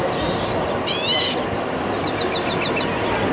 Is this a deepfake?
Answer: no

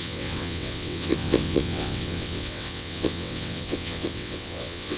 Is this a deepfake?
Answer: yes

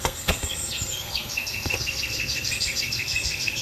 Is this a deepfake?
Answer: yes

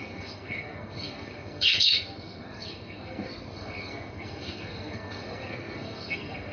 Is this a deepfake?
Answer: yes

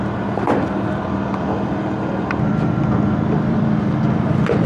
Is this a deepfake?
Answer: yes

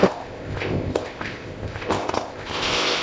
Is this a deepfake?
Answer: yes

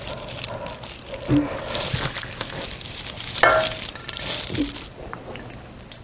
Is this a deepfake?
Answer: no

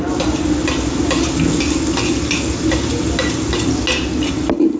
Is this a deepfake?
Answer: no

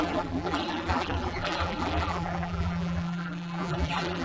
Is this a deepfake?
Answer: yes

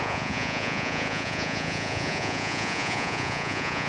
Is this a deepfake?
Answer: yes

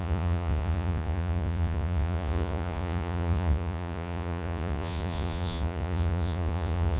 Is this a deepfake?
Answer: yes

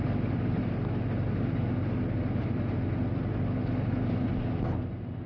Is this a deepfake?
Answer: no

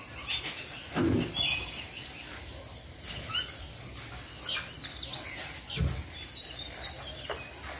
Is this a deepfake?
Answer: no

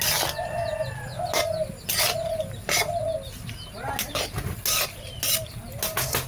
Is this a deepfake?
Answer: no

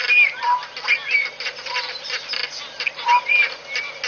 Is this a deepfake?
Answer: no